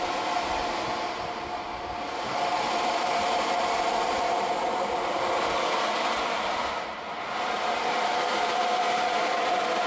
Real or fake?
real